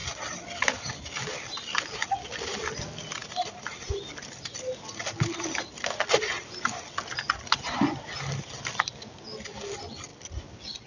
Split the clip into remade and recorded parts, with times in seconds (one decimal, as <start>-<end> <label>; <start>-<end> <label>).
0.0-3.2 remade; 3.2-8.5 recorded; 8.5-10.9 remade